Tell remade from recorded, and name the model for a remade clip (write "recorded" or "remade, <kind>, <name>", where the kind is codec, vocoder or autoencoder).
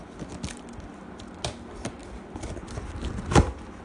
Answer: recorded